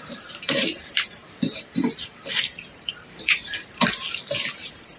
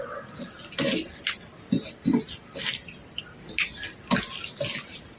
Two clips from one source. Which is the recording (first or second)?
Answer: second